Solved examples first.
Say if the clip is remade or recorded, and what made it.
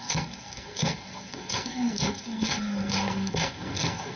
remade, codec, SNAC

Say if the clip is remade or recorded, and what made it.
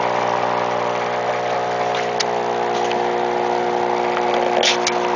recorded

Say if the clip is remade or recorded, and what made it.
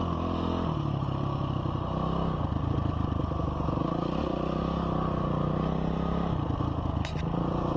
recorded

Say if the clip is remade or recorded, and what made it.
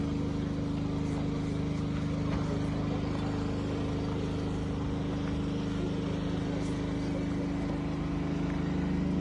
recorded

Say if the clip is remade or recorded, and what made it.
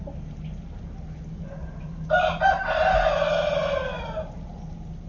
recorded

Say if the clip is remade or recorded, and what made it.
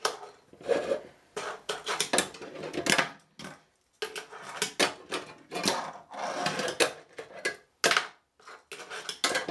recorded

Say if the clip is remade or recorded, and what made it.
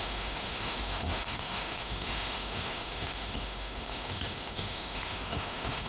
remade, autoencoder, DAC-VAE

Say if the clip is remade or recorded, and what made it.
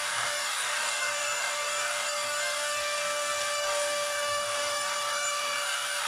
remade, codec, DAC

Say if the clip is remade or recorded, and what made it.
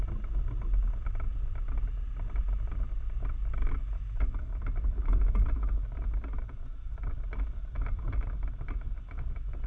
recorded